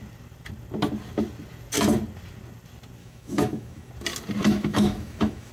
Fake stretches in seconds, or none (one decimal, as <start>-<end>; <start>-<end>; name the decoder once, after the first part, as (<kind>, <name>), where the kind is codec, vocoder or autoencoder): 3.0-3.9 (autoencoder, DAC-VAE); 4.4-5.5